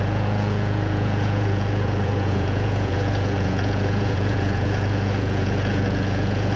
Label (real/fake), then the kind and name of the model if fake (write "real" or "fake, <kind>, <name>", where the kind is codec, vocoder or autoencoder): fake, vocoder, Vocos